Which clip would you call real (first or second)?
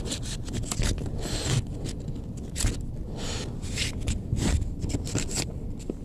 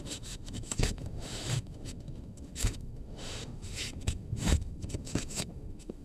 first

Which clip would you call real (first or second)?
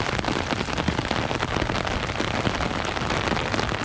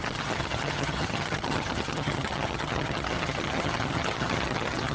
first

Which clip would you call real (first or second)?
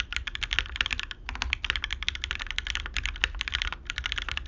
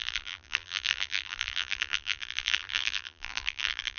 first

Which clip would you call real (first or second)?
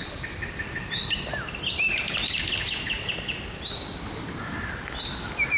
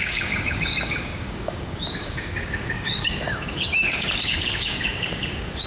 first